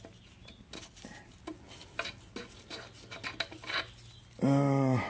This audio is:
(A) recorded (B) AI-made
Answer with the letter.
A